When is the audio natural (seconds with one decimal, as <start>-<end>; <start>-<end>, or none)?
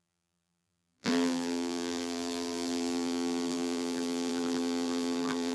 none